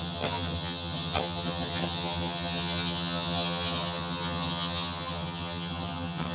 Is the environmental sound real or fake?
fake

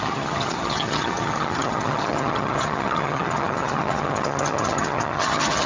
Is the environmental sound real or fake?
fake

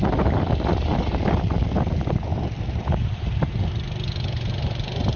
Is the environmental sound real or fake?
real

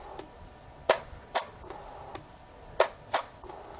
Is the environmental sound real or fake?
real